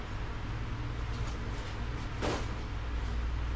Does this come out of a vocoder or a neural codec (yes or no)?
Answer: no